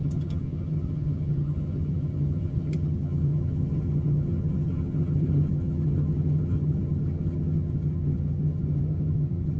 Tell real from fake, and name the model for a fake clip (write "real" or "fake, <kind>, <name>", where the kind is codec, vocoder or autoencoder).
fake, vocoder, HiFi-GAN